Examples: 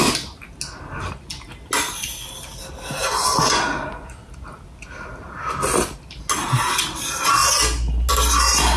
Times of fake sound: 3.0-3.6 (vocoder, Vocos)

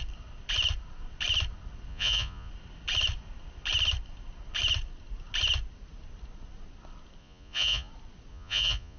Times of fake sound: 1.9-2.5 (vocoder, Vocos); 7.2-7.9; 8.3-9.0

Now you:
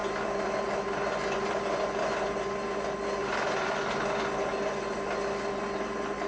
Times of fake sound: none